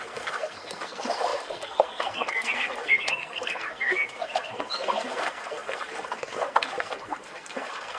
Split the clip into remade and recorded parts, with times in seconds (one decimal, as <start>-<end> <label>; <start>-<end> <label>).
0.0-8.0 remade